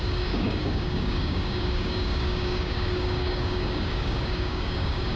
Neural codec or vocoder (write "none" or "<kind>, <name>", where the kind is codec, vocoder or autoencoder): codec, DAC